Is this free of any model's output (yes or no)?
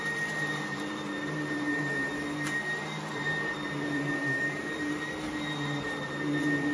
no